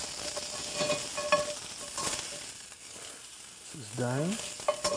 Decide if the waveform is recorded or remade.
recorded